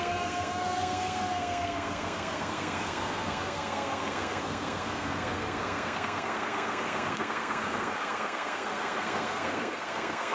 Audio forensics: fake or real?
fake